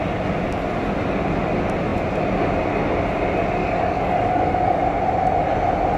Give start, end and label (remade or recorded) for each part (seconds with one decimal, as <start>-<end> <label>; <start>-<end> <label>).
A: 0.0-3.6 recorded; 3.6-4.8 remade; 4.8-6.0 recorded